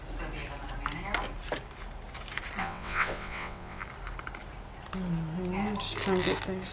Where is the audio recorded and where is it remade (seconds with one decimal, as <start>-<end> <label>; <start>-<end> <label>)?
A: 0.0-2.6 recorded; 2.6-3.8 remade; 3.8-6.7 recorded

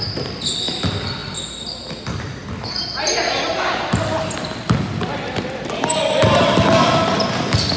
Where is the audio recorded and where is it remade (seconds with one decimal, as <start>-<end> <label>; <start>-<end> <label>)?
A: 0.0-7.8 recorded